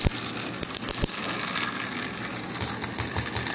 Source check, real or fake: real